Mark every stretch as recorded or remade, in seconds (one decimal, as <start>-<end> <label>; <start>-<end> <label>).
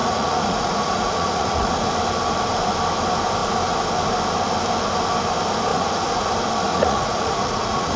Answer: 0.0-1.9 remade; 1.9-5.7 recorded; 5.7-6.3 remade; 6.3-6.7 recorded; 6.7-8.0 remade